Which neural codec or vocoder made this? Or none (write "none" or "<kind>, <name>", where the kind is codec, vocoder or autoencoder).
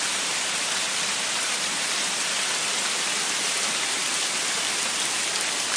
none